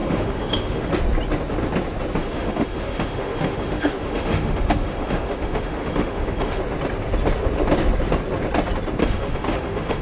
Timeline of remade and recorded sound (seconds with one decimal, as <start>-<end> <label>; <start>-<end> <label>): 0.0-0.9 remade; 0.9-2.2 recorded; 2.2-6.6 remade; 6.6-9.0 recorded; 9.0-10.0 remade